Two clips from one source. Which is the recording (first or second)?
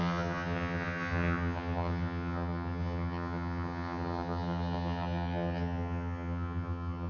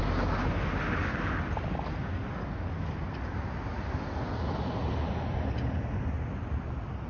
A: second